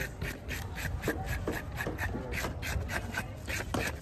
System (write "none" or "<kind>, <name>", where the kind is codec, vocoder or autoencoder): none